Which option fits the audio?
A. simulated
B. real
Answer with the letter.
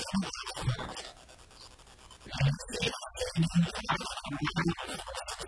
B